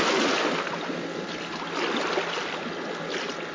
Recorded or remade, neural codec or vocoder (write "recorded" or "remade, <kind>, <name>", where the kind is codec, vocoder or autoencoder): recorded